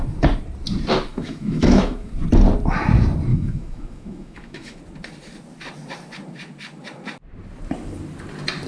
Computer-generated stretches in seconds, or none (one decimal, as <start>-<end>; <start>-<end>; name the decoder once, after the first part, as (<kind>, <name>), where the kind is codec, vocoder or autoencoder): 1.1-2.1 (autoencoder, DAC-VAE); 3.3-4.8